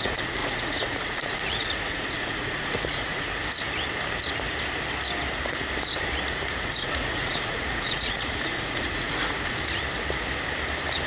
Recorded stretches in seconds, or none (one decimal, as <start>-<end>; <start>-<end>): 3.4-6.6; 9.6-11.1

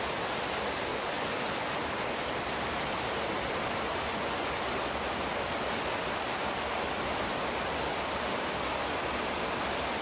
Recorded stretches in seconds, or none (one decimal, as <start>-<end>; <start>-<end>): 0.0-0.9; 1.9-3.9; 4.6-10.0

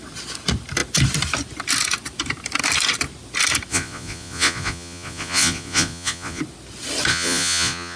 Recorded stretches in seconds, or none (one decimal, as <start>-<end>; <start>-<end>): 0.0-3.7; 6.4-7.1

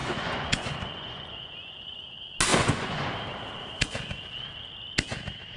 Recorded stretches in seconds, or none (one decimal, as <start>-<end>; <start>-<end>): 2.0-2.5; 3.1-5.6

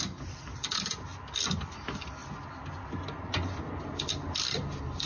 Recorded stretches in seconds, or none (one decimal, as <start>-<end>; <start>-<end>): 0.0-5.1

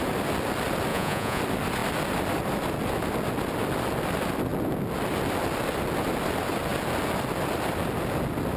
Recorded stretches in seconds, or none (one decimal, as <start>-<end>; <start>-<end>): 0.0-0.9; 1.4-8.6

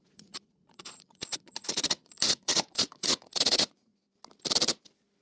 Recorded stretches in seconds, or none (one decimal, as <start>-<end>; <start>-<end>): 3.9-5.2

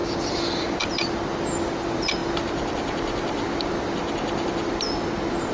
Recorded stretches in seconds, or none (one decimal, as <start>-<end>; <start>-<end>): 0.0-5.5